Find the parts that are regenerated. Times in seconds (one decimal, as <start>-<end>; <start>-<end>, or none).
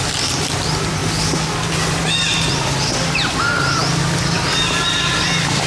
none